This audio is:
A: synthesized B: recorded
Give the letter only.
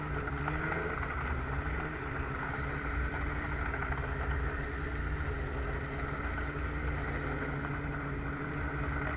B